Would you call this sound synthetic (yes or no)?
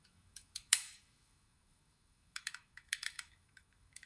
yes